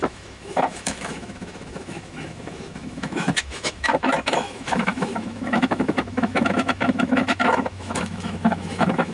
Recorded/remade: remade